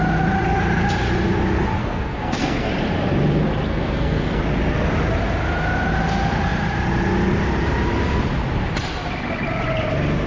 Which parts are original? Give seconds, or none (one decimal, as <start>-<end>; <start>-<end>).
0.0-1.8; 2.7-3.7; 4.4-10.3